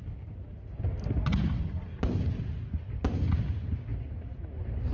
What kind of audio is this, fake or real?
real